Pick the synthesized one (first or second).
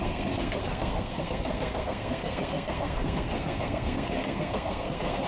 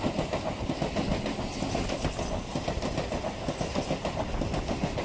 first